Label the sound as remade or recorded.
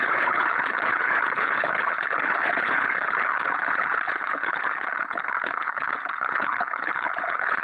remade